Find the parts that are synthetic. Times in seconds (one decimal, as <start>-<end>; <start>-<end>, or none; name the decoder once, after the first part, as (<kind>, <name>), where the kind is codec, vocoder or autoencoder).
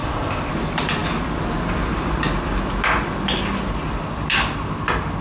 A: 0.0-0.5 (codec, ZipCodec)